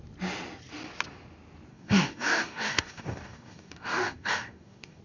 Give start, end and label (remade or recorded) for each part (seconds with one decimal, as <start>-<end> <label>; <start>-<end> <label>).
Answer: 0.0-1.7 recorded; 1.7-5.0 remade